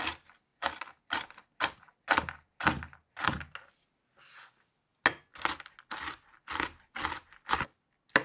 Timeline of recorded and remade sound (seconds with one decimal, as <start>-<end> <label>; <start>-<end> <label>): 0.0-8.2 recorded